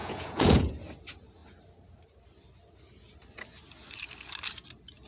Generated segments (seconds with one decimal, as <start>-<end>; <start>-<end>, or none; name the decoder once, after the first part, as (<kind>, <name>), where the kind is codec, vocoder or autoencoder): 0.0-0.7 (vocoder, Vocos)